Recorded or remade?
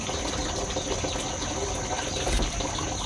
recorded